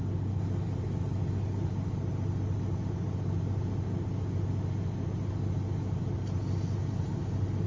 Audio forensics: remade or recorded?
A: recorded